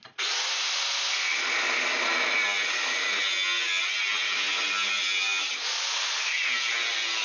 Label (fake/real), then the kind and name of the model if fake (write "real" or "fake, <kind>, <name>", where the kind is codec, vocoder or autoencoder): real